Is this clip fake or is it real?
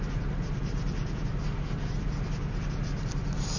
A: real